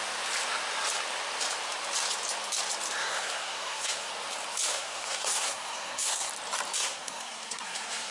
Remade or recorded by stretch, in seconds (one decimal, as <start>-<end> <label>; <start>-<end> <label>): 0.0-3.0 recorded; 3.0-4.1 remade; 4.1-4.7 recorded; 4.7-6.3 remade; 6.3-6.8 recorded; 6.8-8.1 remade